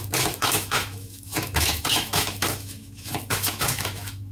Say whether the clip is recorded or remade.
remade